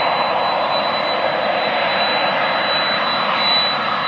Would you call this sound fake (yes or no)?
no